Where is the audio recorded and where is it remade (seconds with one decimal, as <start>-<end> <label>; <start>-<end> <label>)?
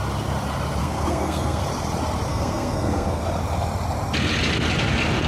0.0-0.8 recorded; 0.8-1.6 remade; 1.6-2.3 recorded; 2.3-3.2 remade; 3.2-5.3 recorded